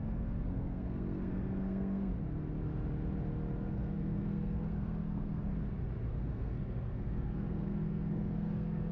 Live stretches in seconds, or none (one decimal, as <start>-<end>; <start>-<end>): 2.1-3.7; 5.5-6.1